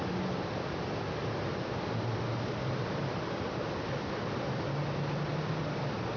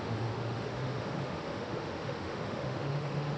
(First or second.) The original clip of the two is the first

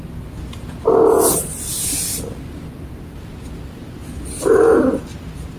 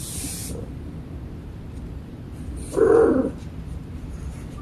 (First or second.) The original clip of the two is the first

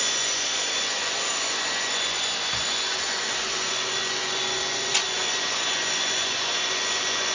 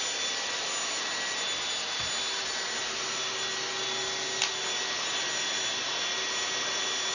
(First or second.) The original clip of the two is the second